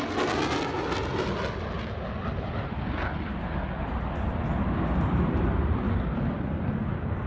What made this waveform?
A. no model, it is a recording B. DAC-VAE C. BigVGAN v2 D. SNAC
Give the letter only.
A